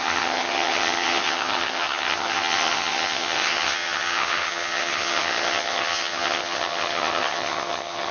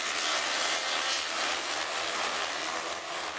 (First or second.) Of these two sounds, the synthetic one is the first